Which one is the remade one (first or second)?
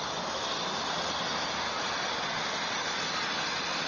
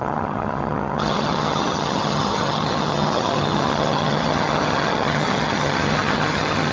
second